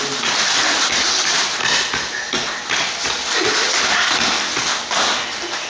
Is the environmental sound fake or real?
real